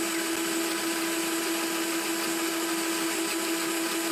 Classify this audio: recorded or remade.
recorded